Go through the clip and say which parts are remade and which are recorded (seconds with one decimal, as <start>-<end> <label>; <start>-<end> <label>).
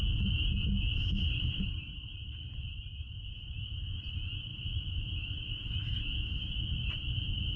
0.0-0.9 recorded; 0.9-3.8 remade; 3.8-4.5 recorded; 4.5-6.5 remade; 6.5-7.6 recorded